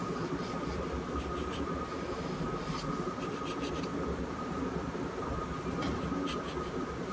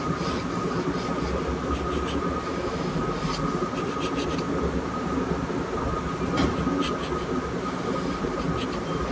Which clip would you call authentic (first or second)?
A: second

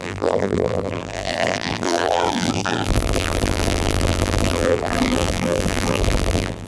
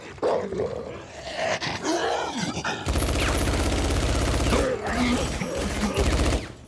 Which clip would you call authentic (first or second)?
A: second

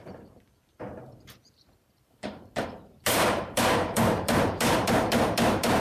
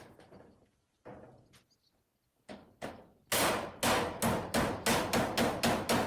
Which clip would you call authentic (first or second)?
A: second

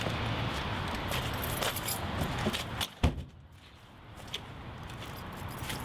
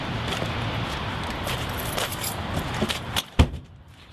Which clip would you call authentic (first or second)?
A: first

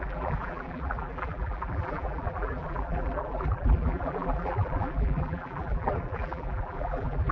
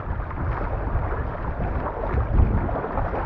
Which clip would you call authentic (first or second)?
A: second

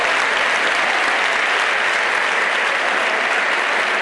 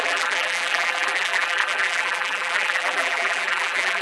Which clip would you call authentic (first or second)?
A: first